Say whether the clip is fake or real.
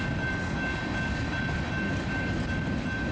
real